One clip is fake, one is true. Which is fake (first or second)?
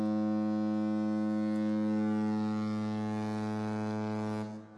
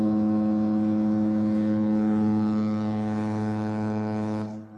second